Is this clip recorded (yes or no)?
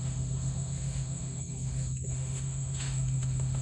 no